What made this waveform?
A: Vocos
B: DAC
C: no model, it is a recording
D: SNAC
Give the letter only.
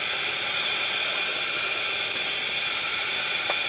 C